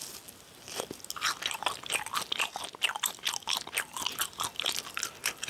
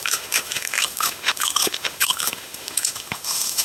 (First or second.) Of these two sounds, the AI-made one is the second